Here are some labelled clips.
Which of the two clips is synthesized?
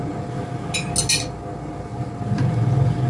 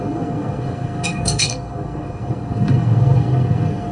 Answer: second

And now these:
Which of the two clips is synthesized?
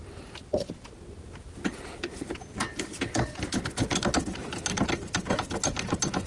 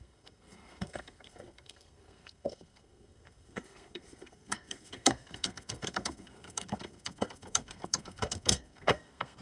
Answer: second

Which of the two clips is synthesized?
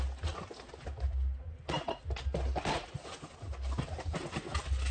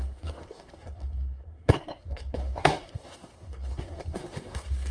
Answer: second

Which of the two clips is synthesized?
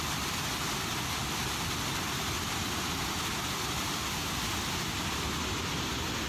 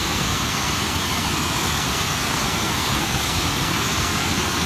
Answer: second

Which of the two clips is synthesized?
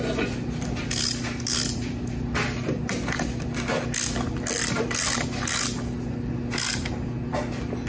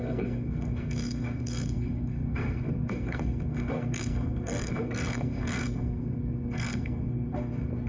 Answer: second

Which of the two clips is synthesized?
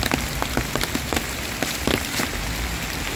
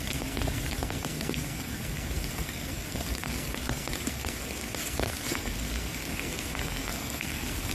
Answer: second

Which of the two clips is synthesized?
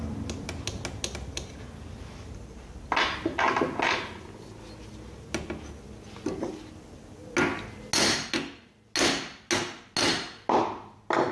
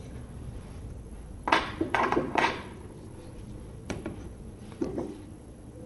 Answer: second